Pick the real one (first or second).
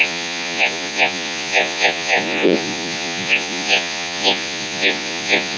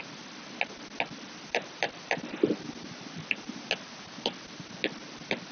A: second